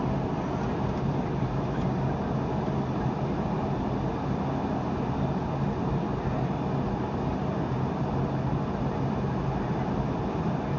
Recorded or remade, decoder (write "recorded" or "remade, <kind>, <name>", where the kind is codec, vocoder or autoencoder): recorded